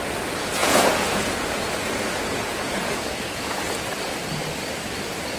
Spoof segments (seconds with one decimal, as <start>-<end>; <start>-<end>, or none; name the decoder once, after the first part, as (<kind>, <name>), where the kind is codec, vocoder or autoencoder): 0.6-3.6 (vocoder, Vocos)